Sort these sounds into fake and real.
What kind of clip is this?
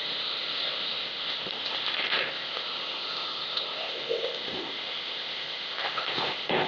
fake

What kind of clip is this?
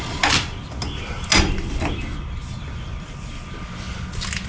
real